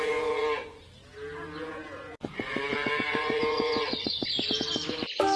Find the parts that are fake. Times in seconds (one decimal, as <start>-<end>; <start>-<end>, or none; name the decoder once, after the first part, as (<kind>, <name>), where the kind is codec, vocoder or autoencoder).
0.0-0.8 (vocoder, Vocos); 1.7-4.2